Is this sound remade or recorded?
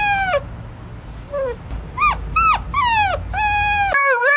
recorded